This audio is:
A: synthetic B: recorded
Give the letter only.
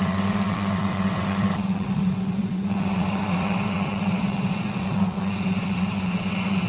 A